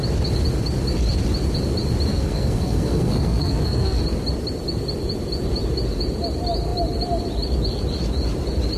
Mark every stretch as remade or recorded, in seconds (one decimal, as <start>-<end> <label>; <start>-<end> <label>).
0.0-2.1 recorded; 2.1-4.0 remade; 4.0-8.8 recorded